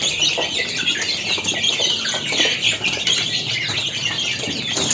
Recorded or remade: recorded